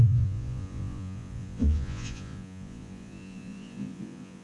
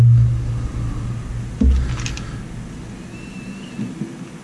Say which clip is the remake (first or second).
first